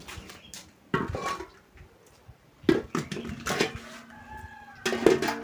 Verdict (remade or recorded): recorded